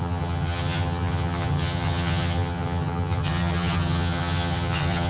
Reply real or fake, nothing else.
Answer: fake